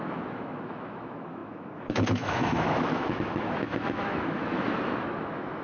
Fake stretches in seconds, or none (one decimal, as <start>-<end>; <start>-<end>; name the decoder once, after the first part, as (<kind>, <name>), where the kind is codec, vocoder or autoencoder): 0.0-5.6 (autoencoder, DAC-VAE)